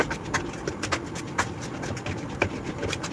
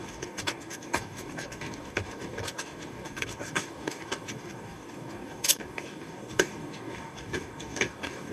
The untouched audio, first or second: first